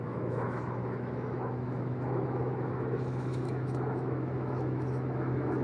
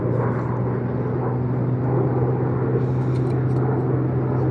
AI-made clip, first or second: first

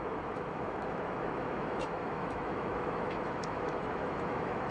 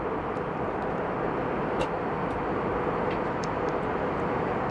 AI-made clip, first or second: first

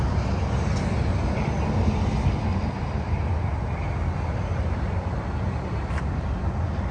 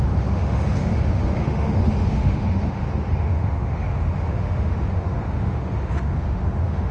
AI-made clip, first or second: second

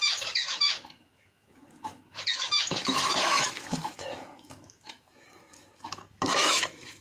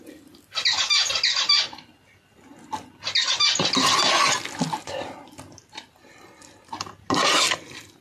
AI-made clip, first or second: first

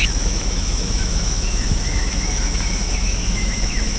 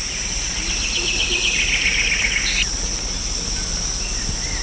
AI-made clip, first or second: first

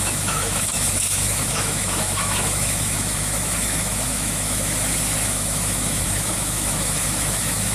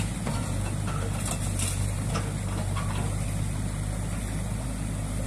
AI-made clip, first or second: first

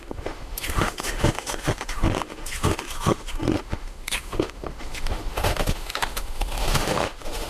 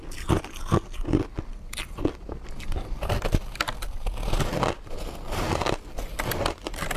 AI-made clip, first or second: first